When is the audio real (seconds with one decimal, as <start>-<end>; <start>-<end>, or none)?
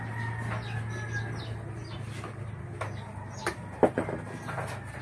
0.0-5.0